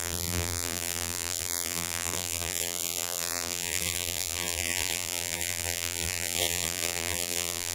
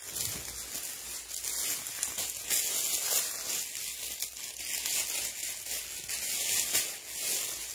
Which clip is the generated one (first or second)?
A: first